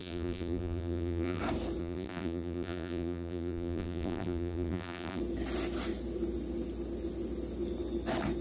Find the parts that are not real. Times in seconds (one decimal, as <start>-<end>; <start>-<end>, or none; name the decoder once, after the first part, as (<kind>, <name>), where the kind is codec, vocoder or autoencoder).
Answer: 0.0-1.4 (vocoder, BigVGAN v2); 1.8-5.2